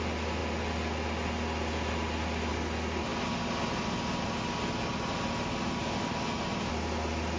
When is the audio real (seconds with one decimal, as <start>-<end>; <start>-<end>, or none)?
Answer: 0.0-7.4